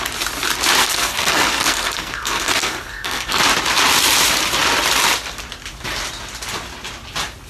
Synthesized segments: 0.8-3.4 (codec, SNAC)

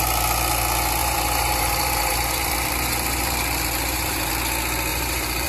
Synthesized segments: 1.0-4.3 (vocoder, BigVGAN v2); 4.9-5.5

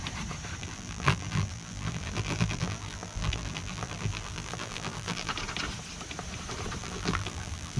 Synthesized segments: 0.6-5.3 (vocoder, BigVGAN v2); 6.8-7.8

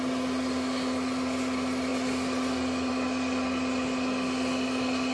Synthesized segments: none

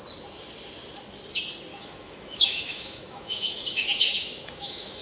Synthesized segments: 1.7-5.0 (autoencoder, DAC-VAE)

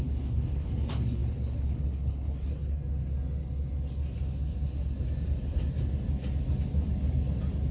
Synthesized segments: 0.0-2.8 (codec, HILCodec)